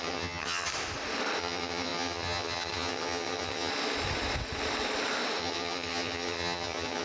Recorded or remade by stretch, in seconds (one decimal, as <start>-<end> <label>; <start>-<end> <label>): 0.0-0.7 remade; 0.7-1.4 recorded; 1.4-3.7 remade; 3.7-5.4 recorded; 5.4-7.0 remade

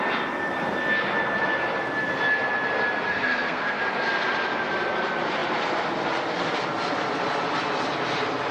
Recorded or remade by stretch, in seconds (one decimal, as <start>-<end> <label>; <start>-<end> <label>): 0.0-3.1 recorded; 3.1-3.8 remade; 3.8-8.5 recorded

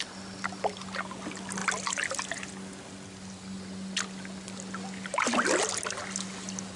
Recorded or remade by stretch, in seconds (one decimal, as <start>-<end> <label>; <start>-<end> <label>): 0.0-6.8 recorded

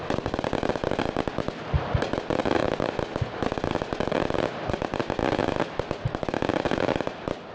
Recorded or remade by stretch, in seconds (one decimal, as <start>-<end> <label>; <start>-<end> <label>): 0.0-7.5 recorded